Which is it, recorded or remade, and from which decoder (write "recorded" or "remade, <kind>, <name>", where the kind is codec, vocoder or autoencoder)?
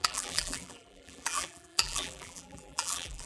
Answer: remade, vocoder, BigVGAN v2